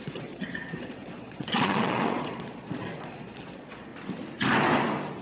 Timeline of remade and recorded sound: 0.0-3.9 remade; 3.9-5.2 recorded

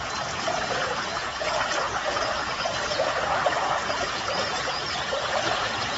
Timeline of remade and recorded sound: 0.0-6.0 remade

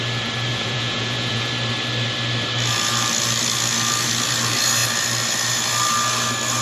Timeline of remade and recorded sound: 0.0-0.5 recorded; 0.5-1.5 remade; 1.5-6.6 recorded